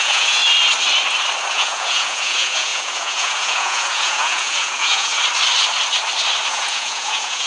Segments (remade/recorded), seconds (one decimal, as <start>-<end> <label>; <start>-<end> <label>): 0.0-0.4 remade; 0.4-1.5 recorded; 1.5-5.1 remade; 5.1-6.5 recorded; 6.5-7.5 remade